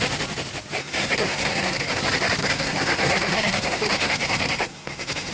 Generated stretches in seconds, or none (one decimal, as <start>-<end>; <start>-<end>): 0.8-2.0; 2.4-5.3